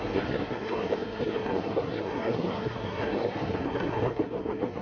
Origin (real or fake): fake